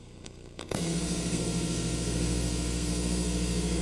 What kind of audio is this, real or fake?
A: fake